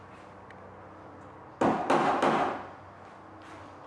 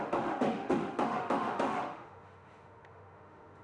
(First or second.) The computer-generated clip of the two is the second